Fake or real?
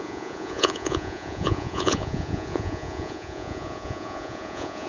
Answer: fake